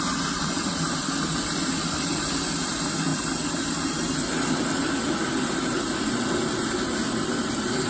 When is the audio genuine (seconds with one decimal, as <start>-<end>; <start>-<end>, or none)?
0.0-7.9